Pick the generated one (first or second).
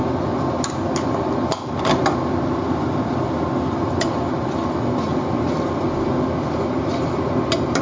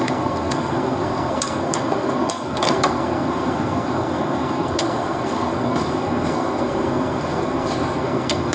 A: second